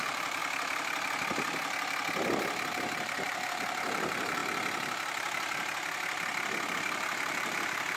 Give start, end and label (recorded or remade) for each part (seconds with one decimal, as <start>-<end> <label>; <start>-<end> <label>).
0.0-0.4 remade; 0.4-2.7 recorded; 2.7-4.4 remade; 4.4-6.7 recorded; 6.7-8.0 remade